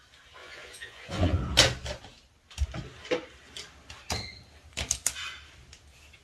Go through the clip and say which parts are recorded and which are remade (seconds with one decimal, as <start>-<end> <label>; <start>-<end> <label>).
0.0-0.4 recorded; 0.4-1.4 remade; 1.4-6.2 recorded